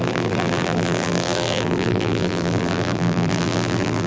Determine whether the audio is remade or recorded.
remade